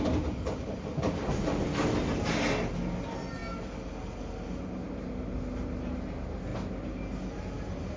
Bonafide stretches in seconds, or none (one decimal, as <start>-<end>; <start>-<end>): 0.0-8.0